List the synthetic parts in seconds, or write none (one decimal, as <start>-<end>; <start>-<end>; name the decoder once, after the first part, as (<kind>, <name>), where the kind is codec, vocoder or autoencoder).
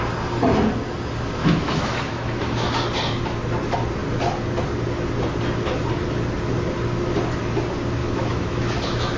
1.4-2.7 (autoencoder, DAC-VAE); 8.0-9.2